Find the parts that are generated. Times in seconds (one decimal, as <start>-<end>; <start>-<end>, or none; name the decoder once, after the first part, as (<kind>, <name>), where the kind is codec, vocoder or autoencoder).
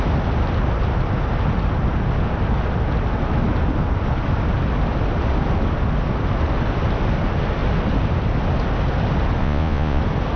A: 9.4-10.0 (vocoder, Vocos)